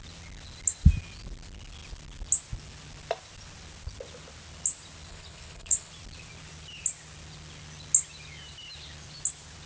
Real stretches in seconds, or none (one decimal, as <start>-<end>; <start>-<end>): 0.0-5.1; 5.9-9.7